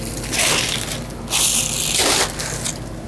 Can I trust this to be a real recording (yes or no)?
yes